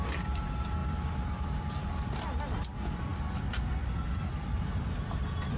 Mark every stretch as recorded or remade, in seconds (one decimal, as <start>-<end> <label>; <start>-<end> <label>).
0.0-5.6 recorded